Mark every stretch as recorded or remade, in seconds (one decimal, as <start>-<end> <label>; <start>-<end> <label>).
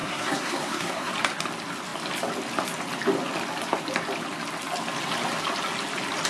0.0-1.1 remade; 1.1-6.3 recorded